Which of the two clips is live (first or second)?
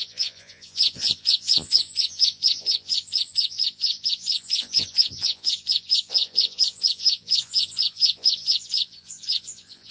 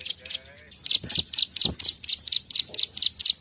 second